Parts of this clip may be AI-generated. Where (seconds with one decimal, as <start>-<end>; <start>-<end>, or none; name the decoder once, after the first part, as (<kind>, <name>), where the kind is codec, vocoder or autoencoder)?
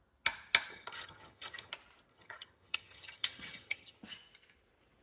0.7-1.7 (vocoder, HiFi-GAN); 2.1-4.0